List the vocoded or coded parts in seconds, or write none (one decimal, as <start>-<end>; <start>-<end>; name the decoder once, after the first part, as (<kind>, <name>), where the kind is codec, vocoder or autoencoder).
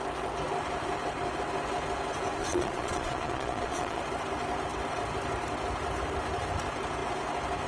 2.4-4.0 (vocoder, Vocos)